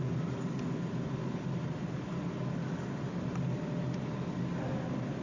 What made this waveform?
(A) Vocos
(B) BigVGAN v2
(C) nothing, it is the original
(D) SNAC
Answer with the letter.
C